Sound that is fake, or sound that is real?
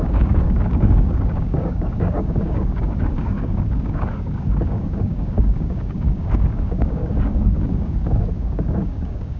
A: fake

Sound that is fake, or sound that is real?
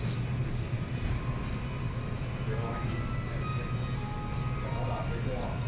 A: real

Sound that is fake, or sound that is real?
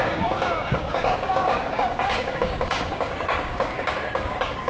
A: fake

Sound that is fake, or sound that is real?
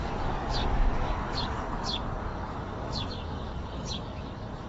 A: fake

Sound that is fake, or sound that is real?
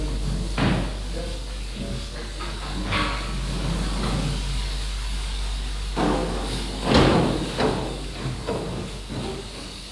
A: fake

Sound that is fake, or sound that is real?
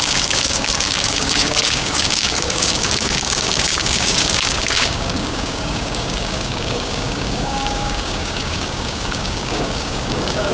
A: fake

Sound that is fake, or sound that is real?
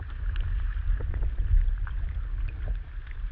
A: real